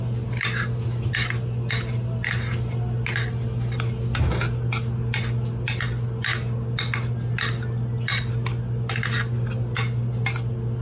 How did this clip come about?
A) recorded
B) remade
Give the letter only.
A